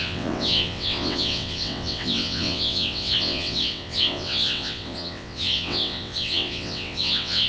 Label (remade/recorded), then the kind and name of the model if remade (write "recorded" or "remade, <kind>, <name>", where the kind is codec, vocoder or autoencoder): remade, vocoder, WaveNeXt